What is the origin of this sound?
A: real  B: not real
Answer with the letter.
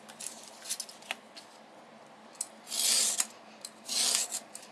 A